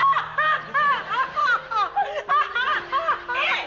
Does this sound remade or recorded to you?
recorded